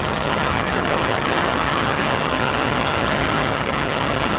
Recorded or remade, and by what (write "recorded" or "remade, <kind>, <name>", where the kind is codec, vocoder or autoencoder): remade, vocoder, HiFi-GAN